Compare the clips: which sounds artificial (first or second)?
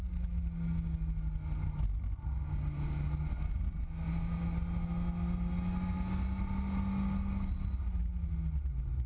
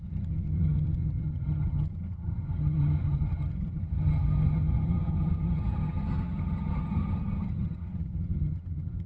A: second